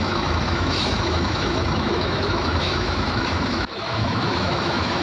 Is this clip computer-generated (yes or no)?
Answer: yes